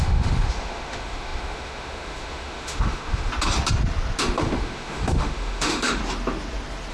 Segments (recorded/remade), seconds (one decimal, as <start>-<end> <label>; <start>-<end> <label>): 0.0-3.3 remade; 3.3-4.2 recorded; 4.2-6.0 remade; 6.0-6.9 recorded